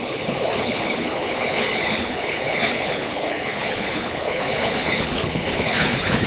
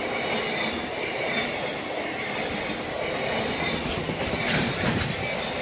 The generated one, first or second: first